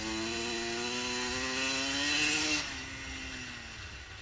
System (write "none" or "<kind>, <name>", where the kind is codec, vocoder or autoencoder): none